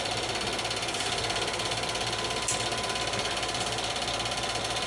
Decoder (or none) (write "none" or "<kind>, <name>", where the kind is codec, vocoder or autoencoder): none